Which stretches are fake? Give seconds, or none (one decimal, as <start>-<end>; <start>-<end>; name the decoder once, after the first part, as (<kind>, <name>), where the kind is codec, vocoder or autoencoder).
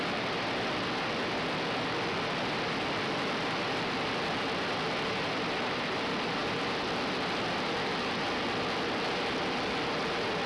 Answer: none